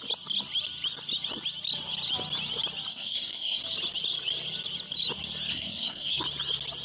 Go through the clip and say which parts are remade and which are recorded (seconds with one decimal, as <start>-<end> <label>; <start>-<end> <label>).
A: 0.0-2.9 recorded; 2.9-3.6 remade; 3.6-5.5 recorded; 5.5-6.2 remade; 6.2-6.8 recorded